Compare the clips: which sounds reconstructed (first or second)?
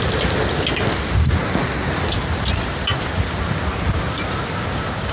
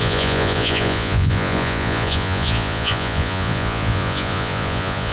second